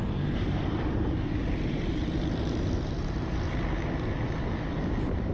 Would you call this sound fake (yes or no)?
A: yes